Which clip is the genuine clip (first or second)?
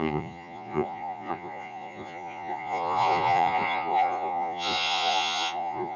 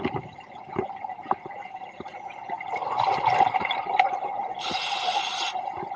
second